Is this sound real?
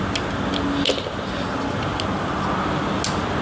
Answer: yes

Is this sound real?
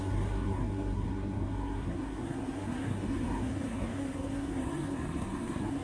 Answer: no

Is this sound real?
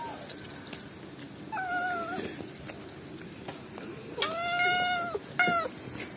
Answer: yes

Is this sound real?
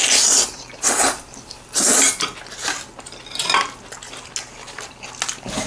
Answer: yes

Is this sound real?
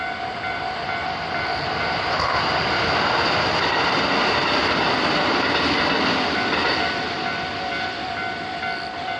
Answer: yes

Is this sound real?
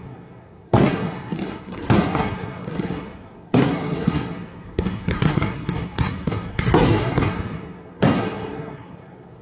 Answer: no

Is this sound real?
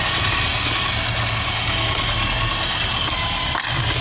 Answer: yes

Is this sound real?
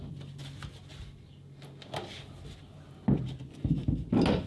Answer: yes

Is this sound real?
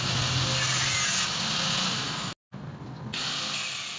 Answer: yes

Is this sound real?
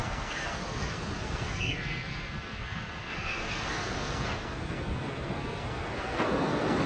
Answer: no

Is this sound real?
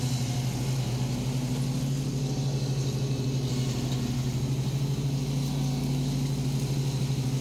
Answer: yes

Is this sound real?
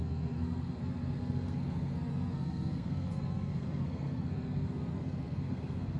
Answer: no